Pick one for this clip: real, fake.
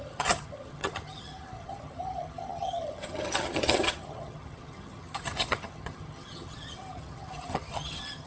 fake